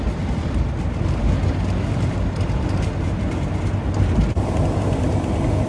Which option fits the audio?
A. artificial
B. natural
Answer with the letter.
B